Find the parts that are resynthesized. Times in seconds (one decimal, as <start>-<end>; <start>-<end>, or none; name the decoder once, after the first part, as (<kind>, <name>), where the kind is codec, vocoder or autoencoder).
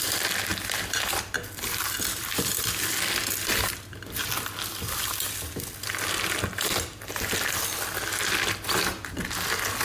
0.5-2.3 (vocoder, BigVGAN v2)